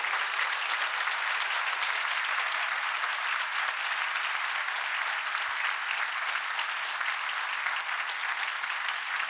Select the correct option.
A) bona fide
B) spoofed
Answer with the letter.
A